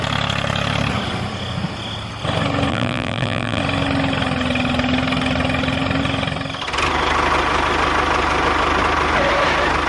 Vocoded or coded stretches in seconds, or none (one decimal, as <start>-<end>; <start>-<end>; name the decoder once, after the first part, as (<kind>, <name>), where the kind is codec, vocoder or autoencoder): 2.7-3.6 (vocoder, BigVGAN v2)